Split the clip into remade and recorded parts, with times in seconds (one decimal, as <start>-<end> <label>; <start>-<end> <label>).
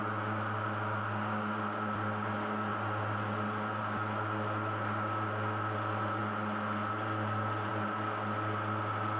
0.0-9.2 recorded